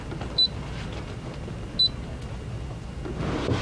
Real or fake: real